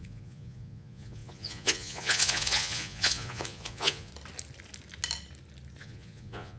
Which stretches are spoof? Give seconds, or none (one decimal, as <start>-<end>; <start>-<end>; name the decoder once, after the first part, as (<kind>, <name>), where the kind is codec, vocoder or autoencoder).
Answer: 0.0-4.1 (vocoder, Vocos); 5.8-6.6